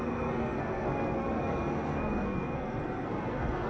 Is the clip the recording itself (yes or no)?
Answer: no